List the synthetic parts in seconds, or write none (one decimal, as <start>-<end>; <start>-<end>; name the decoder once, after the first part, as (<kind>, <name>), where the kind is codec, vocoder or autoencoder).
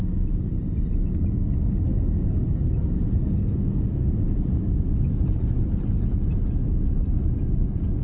3.3-4.1 (codec, SNAC)